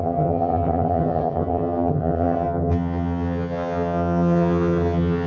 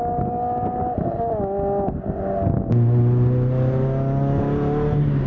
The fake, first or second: first